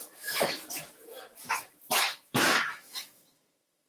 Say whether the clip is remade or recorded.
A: remade